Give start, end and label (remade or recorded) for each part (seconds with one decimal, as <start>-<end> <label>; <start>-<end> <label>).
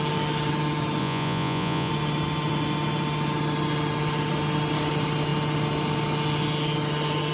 0.0-1.0 recorded; 1.0-1.9 remade; 1.9-7.3 recorded